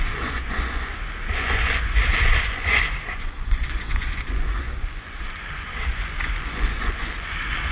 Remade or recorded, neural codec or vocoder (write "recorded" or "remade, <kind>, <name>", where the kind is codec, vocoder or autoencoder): remade, vocoder, Vocos